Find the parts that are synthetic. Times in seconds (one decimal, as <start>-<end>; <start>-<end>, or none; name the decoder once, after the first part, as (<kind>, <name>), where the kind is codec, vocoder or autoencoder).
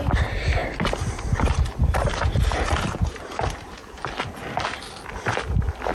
0.0-0.6 (vocoder, BigVGAN v2); 2.7-3.8